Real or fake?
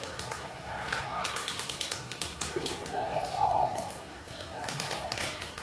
fake